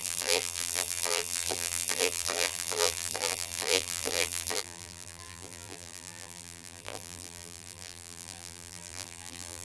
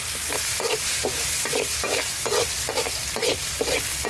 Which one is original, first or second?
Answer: second